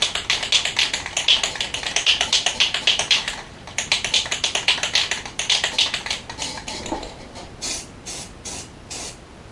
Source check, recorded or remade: recorded